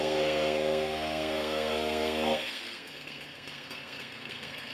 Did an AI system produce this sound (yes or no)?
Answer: yes